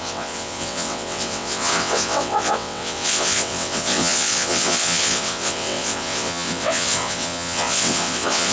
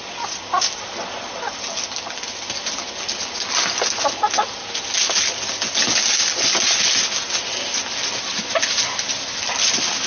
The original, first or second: second